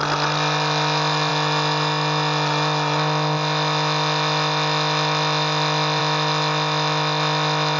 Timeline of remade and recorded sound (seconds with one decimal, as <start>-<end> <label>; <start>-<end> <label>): 0.0-7.8 recorded